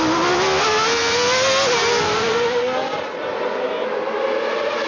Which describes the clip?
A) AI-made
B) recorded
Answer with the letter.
B